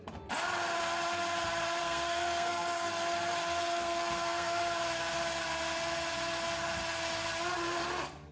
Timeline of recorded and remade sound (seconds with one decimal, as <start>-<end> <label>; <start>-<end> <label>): 0.0-1.8 recorded; 1.8-2.9 remade; 2.9-3.6 recorded; 3.6-4.6 remade; 4.6-8.3 recorded